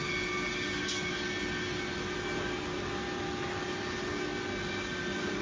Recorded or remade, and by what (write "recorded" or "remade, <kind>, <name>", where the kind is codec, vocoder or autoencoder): recorded